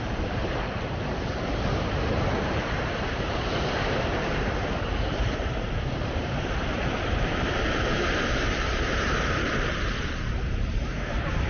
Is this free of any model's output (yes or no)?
no